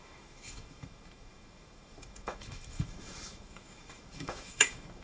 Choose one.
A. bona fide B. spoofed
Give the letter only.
B